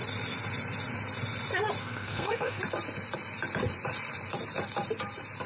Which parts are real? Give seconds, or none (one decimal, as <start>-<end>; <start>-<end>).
0.0-1.8; 2.6-5.5